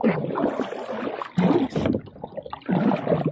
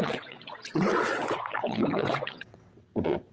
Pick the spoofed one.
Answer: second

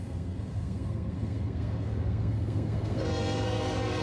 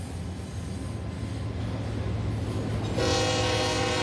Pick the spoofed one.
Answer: first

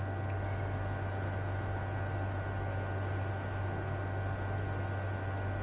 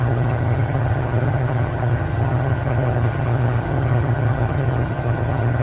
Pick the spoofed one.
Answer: second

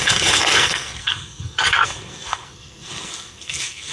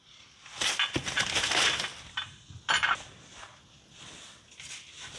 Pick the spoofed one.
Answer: first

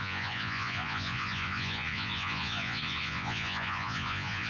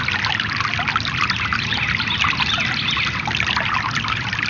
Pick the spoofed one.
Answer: first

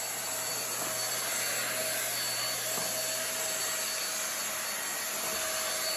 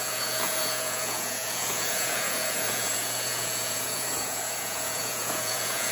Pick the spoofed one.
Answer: second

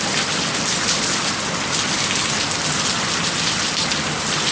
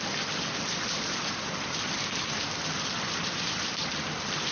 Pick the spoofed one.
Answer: second